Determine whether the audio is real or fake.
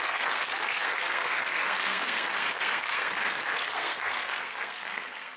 fake